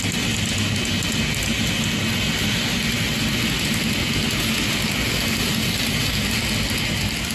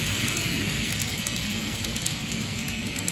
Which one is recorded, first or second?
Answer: first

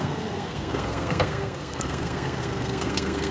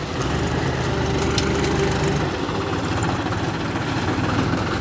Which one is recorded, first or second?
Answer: second